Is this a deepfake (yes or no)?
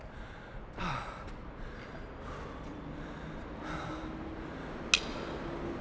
no